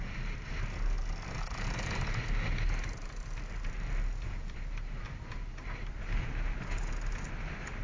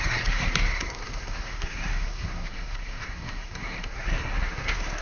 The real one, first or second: first